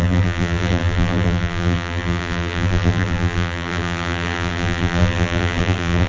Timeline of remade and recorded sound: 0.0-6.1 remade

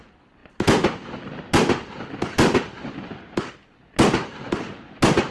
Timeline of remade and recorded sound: 0.0-5.3 recorded

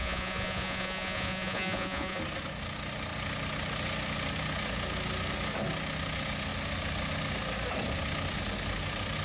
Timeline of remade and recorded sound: 0.0-2.2 remade; 2.2-9.2 recorded

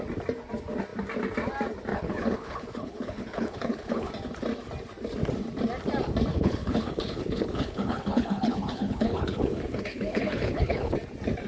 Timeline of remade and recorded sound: 0.0-1.9 recorded; 1.9-4.1 remade; 4.1-6.3 recorded; 6.3-10.9 remade; 10.9-11.5 recorded

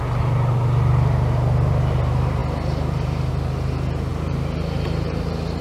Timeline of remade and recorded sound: 0.0-5.6 recorded

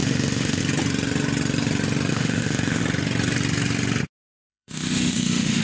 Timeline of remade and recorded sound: 0.0-0.6 remade; 0.6-2.1 recorded; 2.1-2.8 remade; 2.8-4.5 recorded; 4.5-5.6 remade

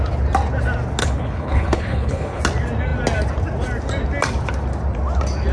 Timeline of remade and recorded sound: 0.0-1.0 recorded; 1.0-2.4 remade; 2.4-5.5 recorded